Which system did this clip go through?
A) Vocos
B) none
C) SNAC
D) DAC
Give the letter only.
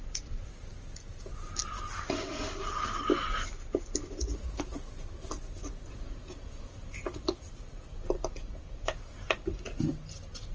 B